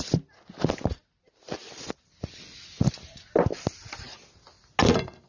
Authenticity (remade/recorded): recorded